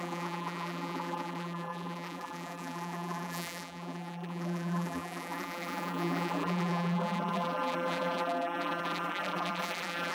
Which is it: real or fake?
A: fake